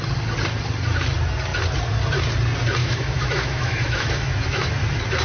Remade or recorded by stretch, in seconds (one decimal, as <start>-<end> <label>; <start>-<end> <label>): 0.0-2.8 recorded; 2.8-4.7 remade; 4.7-5.2 recorded